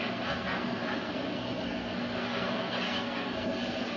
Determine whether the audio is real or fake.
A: fake